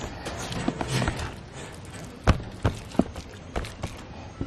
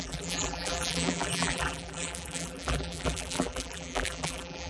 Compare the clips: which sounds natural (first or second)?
first